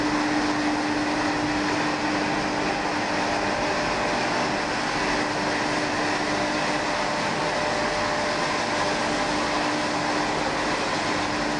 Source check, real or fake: real